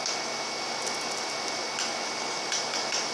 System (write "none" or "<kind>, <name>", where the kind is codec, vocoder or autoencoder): none